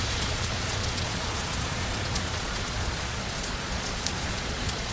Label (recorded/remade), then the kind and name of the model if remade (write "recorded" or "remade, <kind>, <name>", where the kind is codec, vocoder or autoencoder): remade, vocoder, Vocos